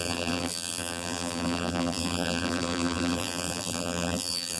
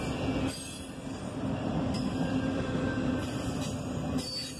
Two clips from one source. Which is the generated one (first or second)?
first